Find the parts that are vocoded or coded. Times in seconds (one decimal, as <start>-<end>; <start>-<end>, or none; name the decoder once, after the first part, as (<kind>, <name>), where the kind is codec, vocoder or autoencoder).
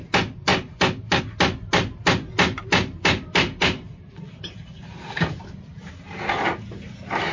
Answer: 0.5-1.2 (vocoder, BigVGAN v2); 2.6-5.9